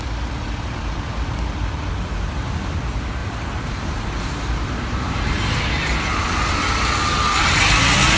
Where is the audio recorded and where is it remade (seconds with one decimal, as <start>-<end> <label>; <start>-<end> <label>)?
0.0-3.2 recorded; 3.2-5.6 remade; 5.6-8.2 recorded